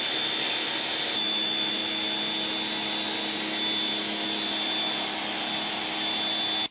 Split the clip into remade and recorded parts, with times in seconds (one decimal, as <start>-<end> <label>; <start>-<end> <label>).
0.0-6.7 recorded